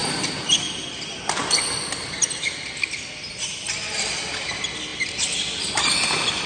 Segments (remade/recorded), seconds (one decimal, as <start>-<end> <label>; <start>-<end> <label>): 0.0-6.5 recorded